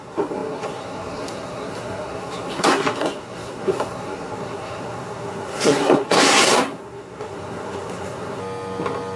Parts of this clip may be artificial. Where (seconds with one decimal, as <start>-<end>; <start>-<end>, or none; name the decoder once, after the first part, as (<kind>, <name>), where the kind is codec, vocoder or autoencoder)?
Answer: 0.0-8.4 (codec, SNAC)